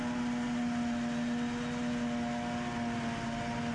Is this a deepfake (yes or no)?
no